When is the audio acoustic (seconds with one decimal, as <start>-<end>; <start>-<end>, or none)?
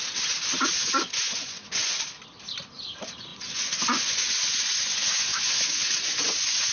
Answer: 0.0-0.8; 2.0-3.3